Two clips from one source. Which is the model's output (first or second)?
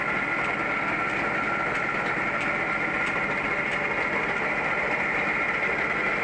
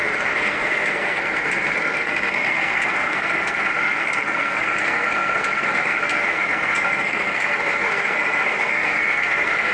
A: second